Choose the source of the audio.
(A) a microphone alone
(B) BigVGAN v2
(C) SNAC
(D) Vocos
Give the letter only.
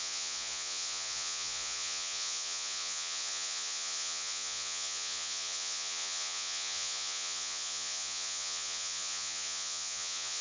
D